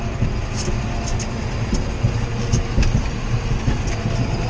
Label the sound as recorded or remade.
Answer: recorded